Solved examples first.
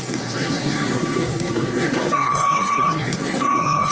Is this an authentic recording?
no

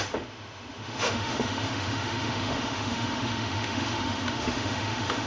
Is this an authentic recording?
no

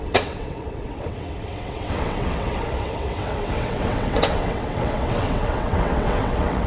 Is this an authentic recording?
no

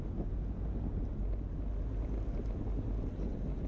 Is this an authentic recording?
yes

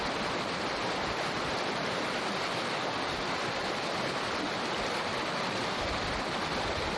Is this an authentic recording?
yes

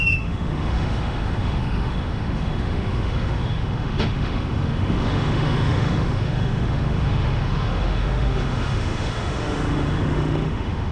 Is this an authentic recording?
no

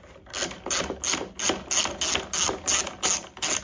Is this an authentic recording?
yes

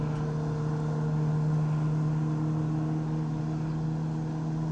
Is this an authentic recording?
yes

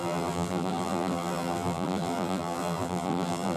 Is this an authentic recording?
no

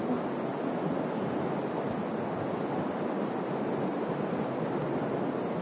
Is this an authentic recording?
yes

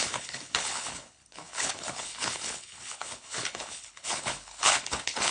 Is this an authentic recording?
no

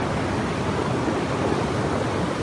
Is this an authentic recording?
yes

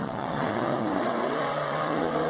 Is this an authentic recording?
no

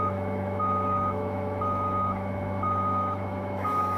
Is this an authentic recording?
no